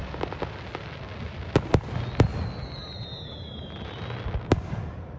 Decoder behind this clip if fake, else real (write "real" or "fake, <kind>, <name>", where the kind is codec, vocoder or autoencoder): real